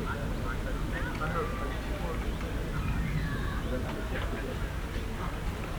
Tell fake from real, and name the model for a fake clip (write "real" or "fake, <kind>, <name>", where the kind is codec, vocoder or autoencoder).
real